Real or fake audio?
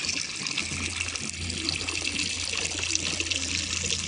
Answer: real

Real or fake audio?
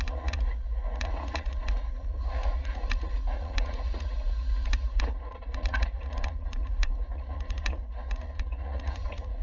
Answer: fake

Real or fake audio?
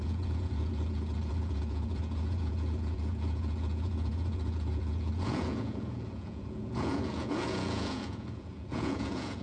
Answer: fake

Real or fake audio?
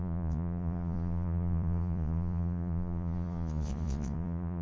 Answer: fake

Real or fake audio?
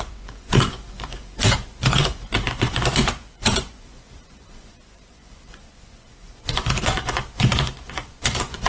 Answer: fake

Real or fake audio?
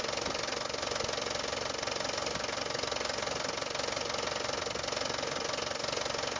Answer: real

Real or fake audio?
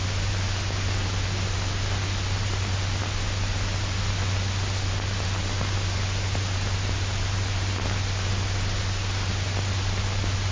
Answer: real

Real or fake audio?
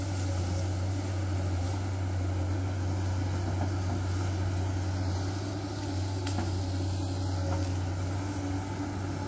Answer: real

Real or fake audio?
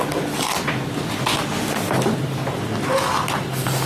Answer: real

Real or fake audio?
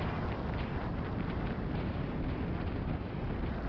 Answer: real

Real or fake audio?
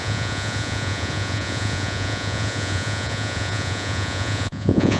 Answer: fake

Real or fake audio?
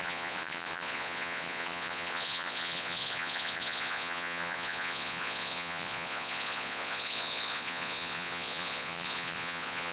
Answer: fake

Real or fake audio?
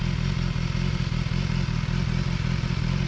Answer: real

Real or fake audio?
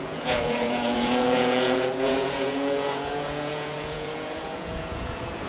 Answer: fake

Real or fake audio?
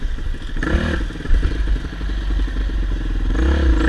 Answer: real